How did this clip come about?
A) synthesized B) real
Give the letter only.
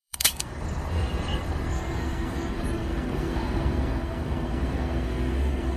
A